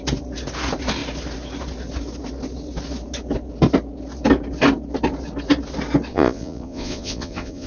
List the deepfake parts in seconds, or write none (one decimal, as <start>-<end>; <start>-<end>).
6.1-7.7

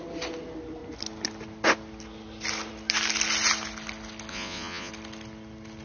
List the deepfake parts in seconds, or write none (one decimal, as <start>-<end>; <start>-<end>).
4.3-4.9

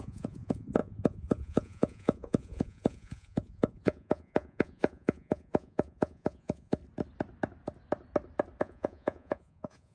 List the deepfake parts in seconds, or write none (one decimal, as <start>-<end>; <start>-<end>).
0.0-6.8; 8.6-9.9

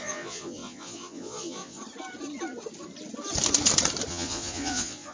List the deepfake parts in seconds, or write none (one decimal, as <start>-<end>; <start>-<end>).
0.0-1.8; 4.1-5.1